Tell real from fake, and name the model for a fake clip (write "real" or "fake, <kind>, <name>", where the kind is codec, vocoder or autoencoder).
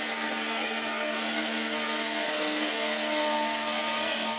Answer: fake, codec, SNAC